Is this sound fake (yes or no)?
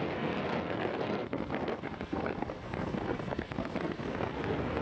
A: yes